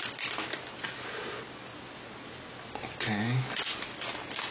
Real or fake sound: real